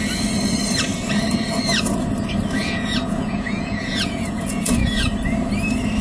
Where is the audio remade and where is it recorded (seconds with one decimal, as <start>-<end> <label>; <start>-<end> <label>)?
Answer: 0.0-2.6 recorded; 2.6-5.1 remade; 5.1-6.0 recorded